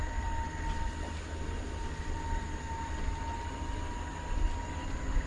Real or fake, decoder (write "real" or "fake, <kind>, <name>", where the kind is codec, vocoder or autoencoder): real